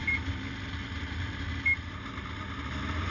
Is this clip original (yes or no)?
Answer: yes